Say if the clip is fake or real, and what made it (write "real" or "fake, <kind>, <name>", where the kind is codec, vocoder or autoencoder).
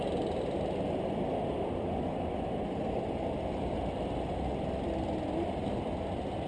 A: real